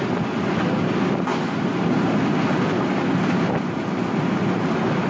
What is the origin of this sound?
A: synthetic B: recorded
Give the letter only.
B